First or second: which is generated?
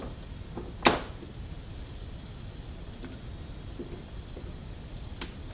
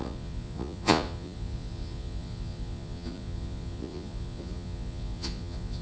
second